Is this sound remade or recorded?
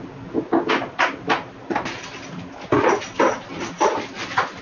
recorded